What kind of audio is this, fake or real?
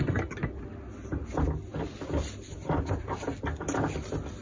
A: real